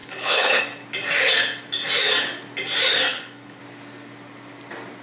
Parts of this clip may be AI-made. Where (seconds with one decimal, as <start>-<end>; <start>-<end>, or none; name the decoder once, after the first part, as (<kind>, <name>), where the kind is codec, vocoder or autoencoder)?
0.0-0.6 (codec, HILCodec); 3.1-3.6